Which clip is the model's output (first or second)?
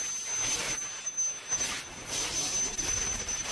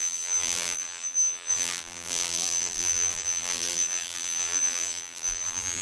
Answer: second